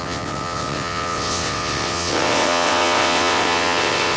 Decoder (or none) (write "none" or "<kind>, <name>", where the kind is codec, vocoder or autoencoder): vocoder, WaveNeXt